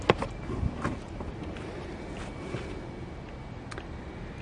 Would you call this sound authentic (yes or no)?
no